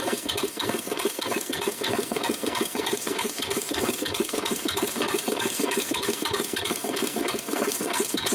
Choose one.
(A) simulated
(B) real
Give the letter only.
A